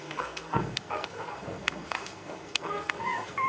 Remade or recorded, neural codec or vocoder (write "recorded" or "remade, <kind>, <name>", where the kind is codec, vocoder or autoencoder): remade, codec, SNAC